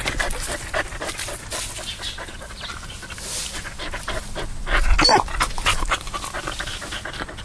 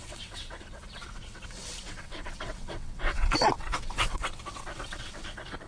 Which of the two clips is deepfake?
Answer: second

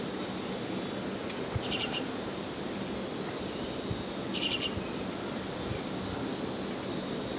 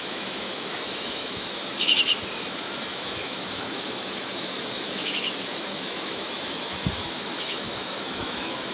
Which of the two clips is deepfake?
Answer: second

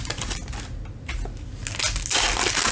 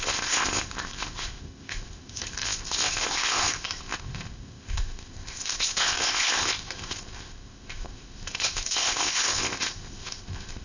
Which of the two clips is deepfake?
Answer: second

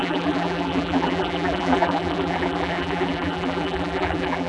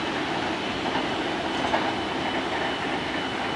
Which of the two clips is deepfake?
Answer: first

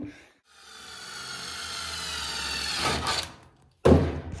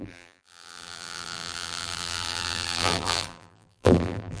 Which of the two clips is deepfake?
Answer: second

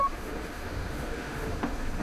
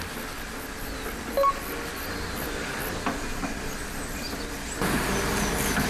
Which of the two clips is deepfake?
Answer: first